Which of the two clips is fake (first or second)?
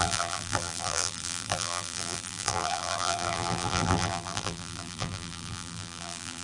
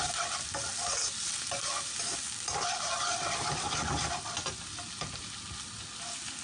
first